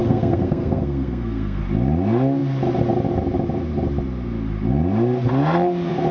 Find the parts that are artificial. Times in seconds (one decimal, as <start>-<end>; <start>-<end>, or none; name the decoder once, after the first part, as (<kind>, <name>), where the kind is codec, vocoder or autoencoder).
0.0-1.6 (codec, SNAC)